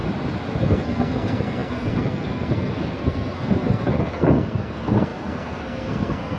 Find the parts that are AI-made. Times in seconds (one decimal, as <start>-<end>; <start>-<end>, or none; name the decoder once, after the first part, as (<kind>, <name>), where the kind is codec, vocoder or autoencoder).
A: 0.6-6.4 (codec, SNAC)